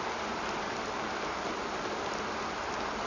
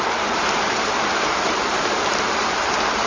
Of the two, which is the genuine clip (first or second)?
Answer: first